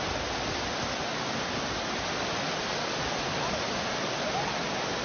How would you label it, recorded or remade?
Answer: recorded